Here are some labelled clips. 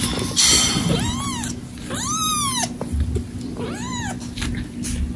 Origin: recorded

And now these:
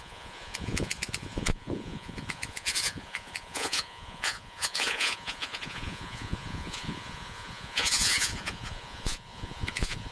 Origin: remade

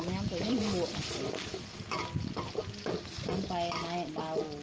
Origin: recorded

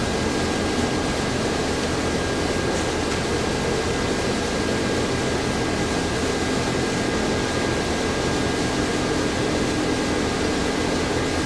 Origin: recorded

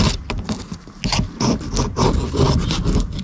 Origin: recorded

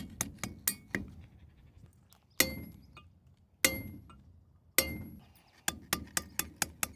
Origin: recorded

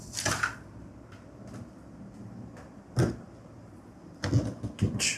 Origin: recorded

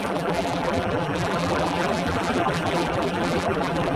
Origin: remade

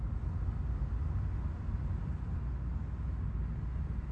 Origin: recorded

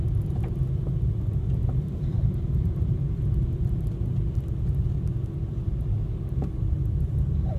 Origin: recorded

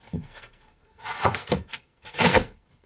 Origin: remade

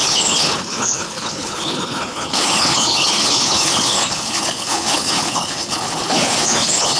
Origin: remade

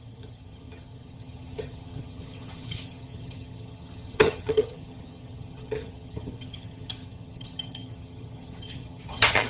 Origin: remade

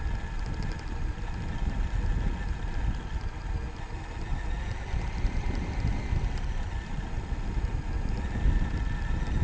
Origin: recorded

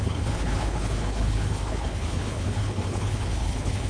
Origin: remade